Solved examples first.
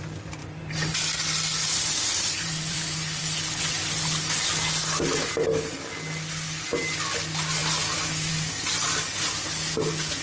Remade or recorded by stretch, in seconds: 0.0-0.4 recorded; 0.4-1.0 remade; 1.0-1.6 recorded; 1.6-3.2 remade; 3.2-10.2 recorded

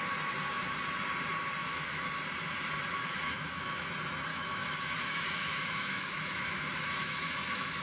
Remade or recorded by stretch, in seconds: 0.0-1.6 recorded; 1.6-2.1 remade; 2.1-3.0 recorded; 3.0-3.9 remade; 3.9-4.3 recorded; 4.3-7.8 remade

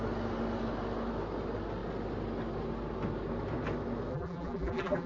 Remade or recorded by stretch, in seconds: 0.0-4.1 recorded; 4.1-5.1 remade

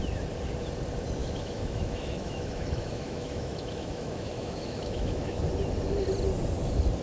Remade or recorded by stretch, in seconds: 0.0-1.2 recorded; 1.2-5.4 remade; 5.4-7.0 recorded

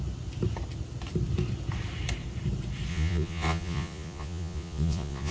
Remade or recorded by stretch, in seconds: 0.0-2.9 recorded; 2.9-5.3 remade

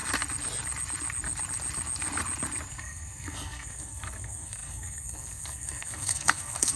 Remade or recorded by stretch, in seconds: 0.0-2.7 recorded; 2.7-6.8 remade

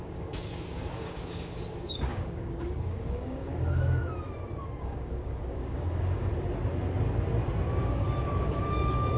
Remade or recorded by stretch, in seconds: 0.0-4.0 remade; 4.0-4.8 recorded; 4.8-6.3 remade; 6.3-7.8 recorded; 7.8-9.2 remade

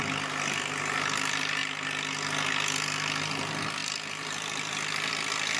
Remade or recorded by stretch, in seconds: 0.0-3.8 recorded; 3.8-5.1 remade; 5.1-5.6 recorded